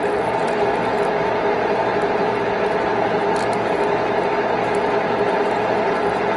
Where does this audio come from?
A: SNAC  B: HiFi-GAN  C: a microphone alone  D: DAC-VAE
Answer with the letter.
C